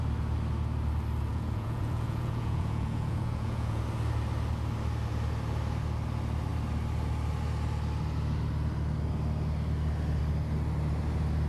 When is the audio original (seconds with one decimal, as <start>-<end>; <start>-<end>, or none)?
0.0-1.3; 3.8-11.5